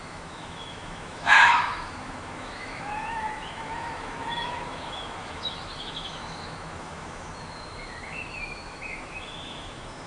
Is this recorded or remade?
remade